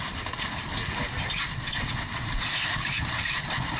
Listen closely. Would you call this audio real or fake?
real